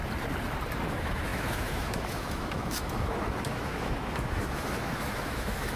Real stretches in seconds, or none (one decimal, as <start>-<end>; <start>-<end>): 0.0-0.9